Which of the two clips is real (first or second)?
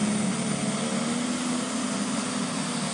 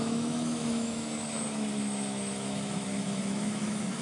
first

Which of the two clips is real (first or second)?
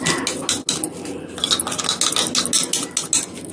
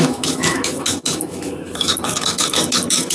first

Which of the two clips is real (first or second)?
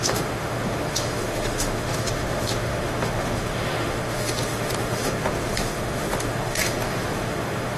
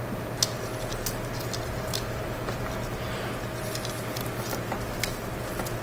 second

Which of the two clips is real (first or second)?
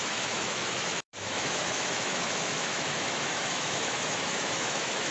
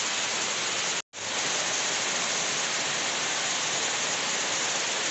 second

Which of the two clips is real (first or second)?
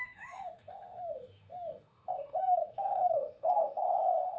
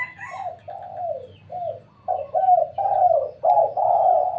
second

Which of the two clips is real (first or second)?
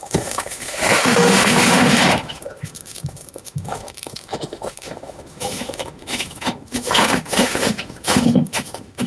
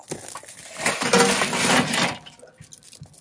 second